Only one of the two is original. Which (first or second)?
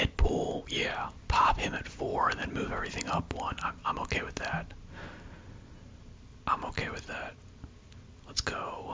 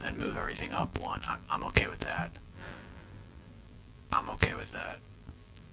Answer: first